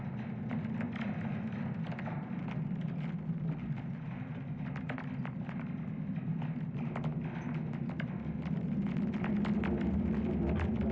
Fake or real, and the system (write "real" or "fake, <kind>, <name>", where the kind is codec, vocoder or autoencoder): real